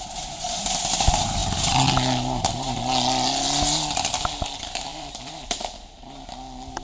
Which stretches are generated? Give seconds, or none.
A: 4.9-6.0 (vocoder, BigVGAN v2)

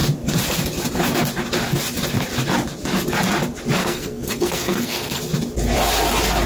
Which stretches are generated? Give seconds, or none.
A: 3.8-5.2 (codec, SNAC)

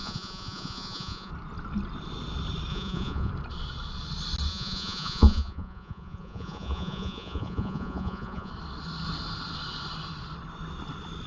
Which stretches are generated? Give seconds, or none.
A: 0.0-1.3 (vocoder, Vocos); 2.7-3.3; 4.5-8.5

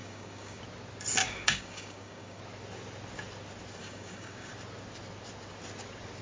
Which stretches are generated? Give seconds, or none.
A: 0.0-0.6 (codec, DAC); 1.2-2.4; 3.8-4.5

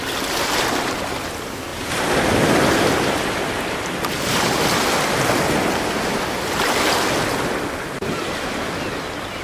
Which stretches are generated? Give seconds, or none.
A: none

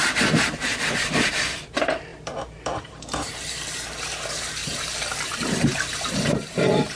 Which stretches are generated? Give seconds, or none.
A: 0.0-7.0 (vocoder, BigVGAN v2)

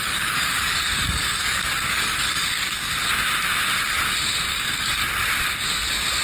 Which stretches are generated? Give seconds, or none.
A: 0.0-2.9 (codec, DAC); 4.5-5.0

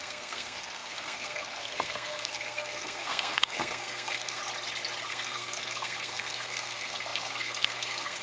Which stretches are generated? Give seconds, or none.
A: 0.0-4.4 (codec, SNAC); 5.1-8.2